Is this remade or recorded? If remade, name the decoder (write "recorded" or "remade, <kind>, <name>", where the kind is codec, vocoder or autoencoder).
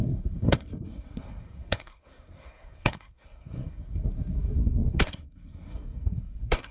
remade, codec, SNAC